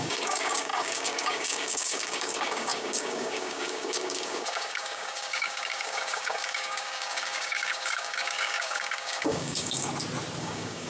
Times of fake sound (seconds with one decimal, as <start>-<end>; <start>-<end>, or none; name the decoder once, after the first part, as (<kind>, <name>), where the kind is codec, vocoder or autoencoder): 0.0-9.9 (codec, DAC); 10.4-10.9